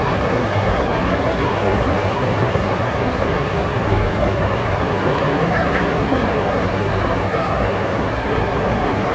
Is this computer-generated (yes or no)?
yes